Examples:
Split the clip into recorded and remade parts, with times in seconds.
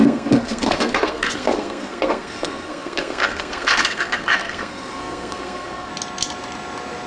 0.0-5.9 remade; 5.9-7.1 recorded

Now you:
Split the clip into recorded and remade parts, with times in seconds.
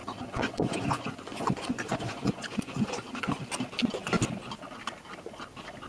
0.0-3.5 remade; 3.5-5.9 recorded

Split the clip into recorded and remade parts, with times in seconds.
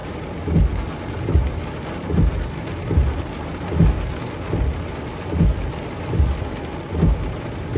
0.0-7.8 recorded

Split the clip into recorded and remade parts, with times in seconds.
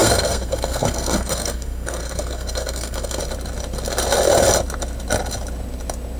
0.0-3.2 remade; 3.2-6.2 recorded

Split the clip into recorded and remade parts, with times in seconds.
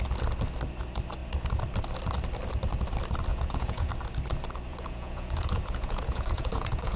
0.0-3.3 recorded; 3.3-3.9 remade; 3.9-4.7 recorded; 4.7-7.0 remade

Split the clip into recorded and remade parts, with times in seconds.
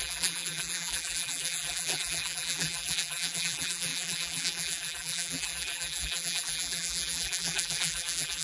0.0-8.4 remade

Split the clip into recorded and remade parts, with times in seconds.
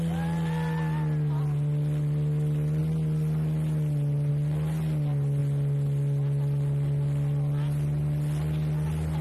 0.0-9.2 recorded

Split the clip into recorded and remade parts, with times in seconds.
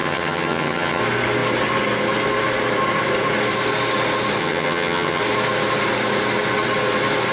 0.0-1.0 remade; 1.0-4.4 recorded; 4.4-5.2 remade; 5.2-7.3 recorded